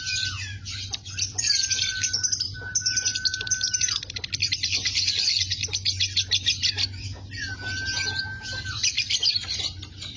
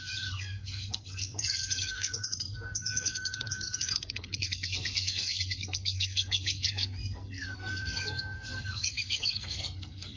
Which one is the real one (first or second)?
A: first